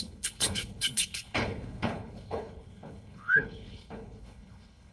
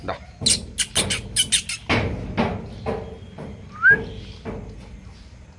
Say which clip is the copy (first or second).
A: first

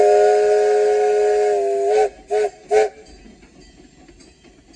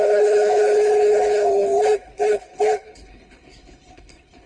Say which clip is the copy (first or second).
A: second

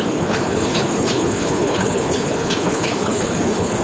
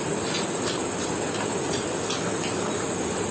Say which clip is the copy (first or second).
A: first